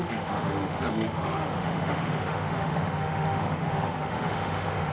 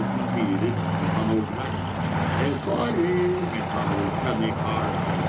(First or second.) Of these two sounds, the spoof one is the first